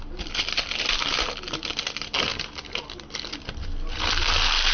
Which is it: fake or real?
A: real